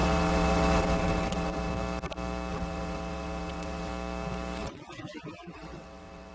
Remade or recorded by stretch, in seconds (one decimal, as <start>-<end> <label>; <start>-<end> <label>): 0.0-1.7 remade; 1.7-2.5 recorded; 2.5-3.9 remade; 3.9-4.6 recorded; 4.6-6.3 remade